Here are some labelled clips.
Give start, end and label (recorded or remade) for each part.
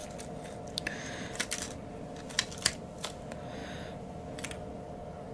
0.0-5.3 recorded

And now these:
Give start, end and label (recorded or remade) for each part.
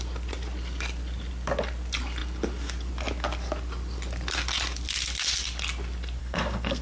0.0-6.2 recorded; 6.2-6.8 remade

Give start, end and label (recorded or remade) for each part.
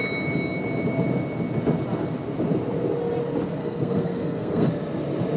0.0-3.6 recorded; 3.6-4.7 remade; 4.7-5.4 recorded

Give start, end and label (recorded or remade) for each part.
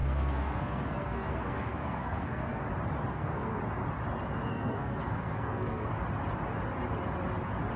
0.0-2.6 remade; 2.6-3.1 recorded; 3.1-3.6 remade; 3.6-4.5 recorded; 4.5-5.9 remade; 5.9-7.8 recorded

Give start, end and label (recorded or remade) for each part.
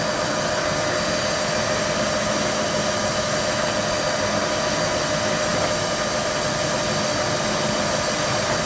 0.0-8.7 recorded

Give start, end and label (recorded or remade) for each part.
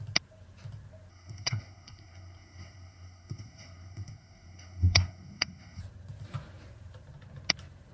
0.0-1.1 recorded; 1.1-5.8 remade; 5.8-7.9 recorded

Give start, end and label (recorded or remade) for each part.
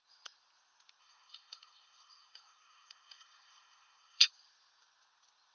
0.0-1.0 recorded; 1.0-4.3 remade; 4.3-5.5 recorded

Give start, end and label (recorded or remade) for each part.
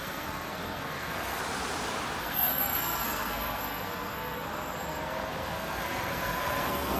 0.0-1.4 remade; 1.4-2.2 recorded; 2.2-7.0 remade